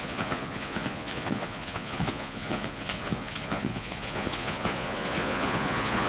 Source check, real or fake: fake